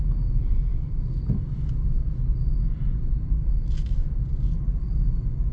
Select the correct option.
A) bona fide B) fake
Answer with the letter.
A